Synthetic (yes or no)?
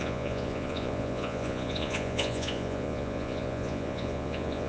yes